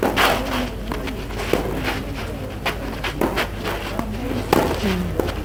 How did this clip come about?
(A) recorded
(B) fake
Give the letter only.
A